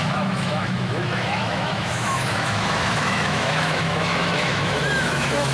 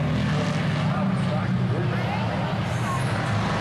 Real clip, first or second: second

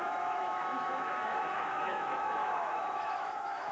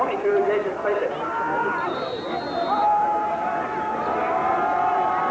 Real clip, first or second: second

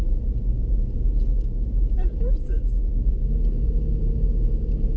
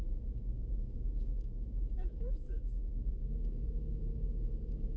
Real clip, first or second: first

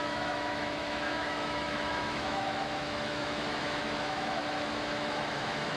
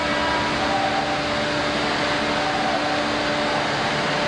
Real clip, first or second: second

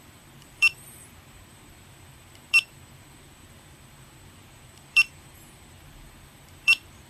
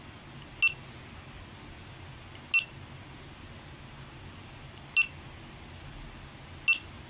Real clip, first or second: second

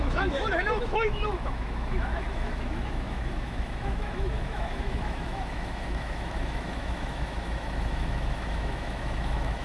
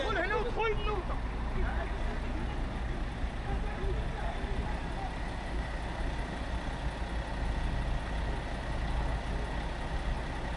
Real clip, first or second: second